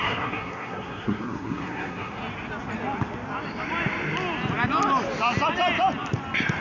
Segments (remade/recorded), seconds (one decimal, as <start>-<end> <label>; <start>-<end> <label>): 0.0-2.2 remade; 2.2-6.6 recorded